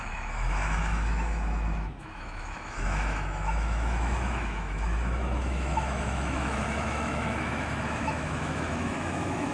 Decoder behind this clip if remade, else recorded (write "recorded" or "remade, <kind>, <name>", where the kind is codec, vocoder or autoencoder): remade, autoencoder, DAC-VAE